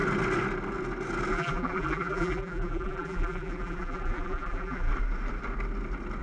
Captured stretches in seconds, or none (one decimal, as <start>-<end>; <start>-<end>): 0.0-1.3; 4.9-6.2